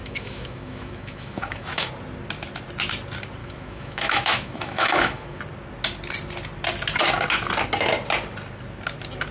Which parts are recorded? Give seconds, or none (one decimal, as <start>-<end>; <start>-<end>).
1.9-3.4; 5.4-9.3